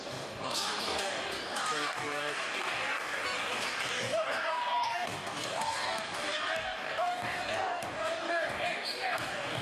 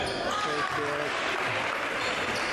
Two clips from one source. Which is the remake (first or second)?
first